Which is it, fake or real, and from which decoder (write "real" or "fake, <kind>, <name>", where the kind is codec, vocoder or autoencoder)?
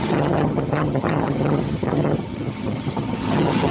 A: fake, vocoder, HiFi-GAN